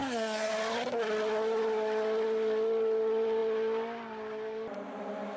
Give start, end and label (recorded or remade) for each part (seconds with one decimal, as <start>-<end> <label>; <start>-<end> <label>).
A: 0.0-0.5 remade; 0.5-5.4 recorded